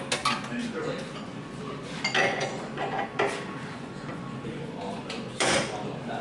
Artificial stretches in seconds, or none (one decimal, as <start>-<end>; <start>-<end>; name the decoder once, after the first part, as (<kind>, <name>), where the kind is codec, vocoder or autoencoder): 0.6-1.6 (vocoder, Vocos); 2.2-3.0; 3.7-5.6